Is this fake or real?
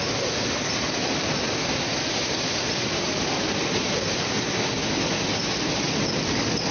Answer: real